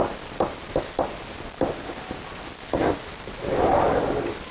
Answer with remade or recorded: recorded